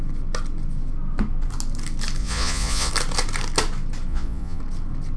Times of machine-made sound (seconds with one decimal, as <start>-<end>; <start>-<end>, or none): 2.2-2.9; 4.1-4.6